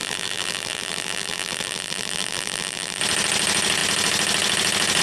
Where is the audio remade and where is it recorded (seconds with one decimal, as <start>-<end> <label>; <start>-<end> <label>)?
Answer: 0.0-3.0 remade; 3.0-5.0 recorded